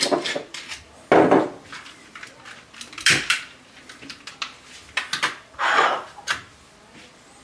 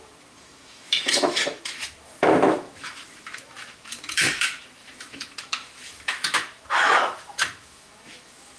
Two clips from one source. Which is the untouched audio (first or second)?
first